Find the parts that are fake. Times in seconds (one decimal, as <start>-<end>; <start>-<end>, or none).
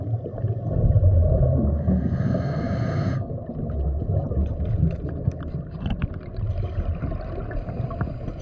none